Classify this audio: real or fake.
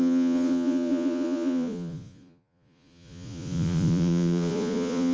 fake